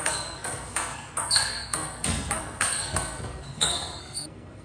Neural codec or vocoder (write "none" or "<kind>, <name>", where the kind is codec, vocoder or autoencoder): codec, SNAC